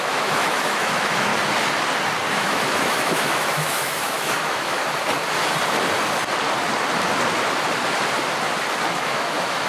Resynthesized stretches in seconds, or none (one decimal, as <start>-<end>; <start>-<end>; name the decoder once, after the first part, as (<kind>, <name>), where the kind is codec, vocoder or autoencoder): 0.0-1.3 (autoencoder, DAC-VAE); 2.3-4.8; 8.9-9.7